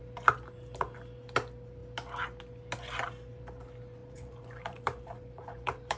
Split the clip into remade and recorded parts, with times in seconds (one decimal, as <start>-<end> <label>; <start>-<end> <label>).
0.0-4.0 recorded; 4.0-6.0 remade